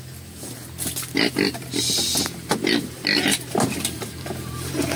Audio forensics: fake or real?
real